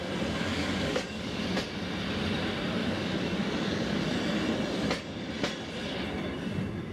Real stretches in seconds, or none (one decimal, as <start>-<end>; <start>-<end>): 0.0-0.4; 1.4-2.8; 4.0-6.9